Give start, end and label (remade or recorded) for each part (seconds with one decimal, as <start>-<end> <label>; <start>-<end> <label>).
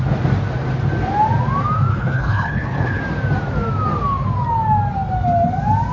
0.0-1.9 recorded; 1.9-3.0 remade; 3.0-5.9 recorded